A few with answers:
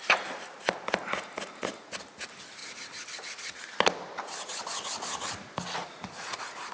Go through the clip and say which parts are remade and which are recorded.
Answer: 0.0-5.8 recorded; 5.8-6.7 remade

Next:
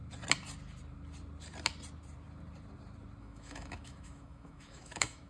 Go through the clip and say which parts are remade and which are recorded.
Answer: 0.0-3.2 recorded; 3.2-5.3 remade